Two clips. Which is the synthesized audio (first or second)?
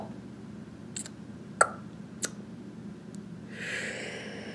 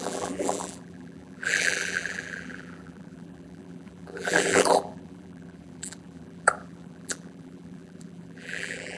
second